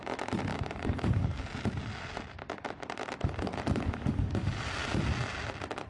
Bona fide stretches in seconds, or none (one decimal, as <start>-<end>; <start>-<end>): 0.0-0.5; 1.5-3.5; 4.6-5.9